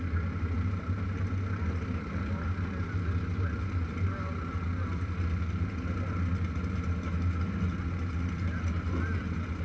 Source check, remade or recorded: recorded